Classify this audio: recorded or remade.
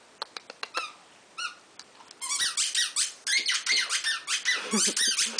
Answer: recorded